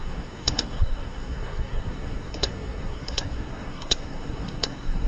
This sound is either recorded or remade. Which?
remade